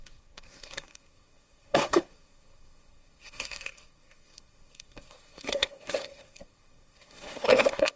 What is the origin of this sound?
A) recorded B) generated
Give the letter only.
B